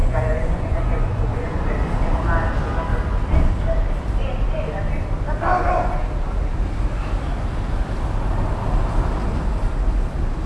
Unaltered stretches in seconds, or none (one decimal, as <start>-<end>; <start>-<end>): 1.7-10.5